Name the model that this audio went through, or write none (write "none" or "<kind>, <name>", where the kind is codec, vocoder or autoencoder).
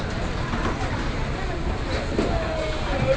none